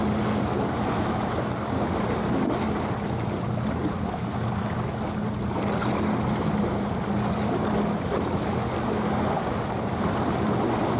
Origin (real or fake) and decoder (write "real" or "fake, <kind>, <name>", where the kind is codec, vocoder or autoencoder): real